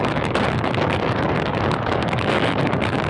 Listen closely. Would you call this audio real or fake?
fake